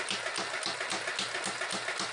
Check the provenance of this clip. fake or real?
real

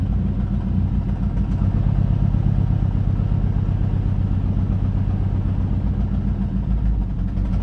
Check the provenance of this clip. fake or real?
real